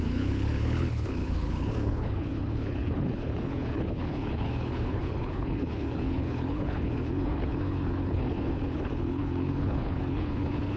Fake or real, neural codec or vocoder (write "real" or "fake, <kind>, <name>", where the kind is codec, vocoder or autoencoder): fake, codec, HILCodec